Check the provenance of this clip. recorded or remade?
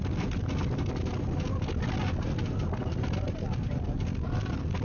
recorded